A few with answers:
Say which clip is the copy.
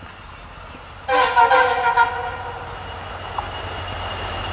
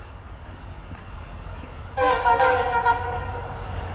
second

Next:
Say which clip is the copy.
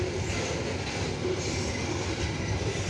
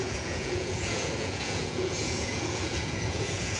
second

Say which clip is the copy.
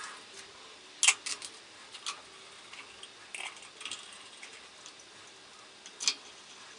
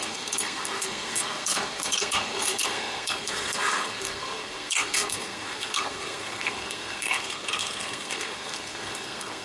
second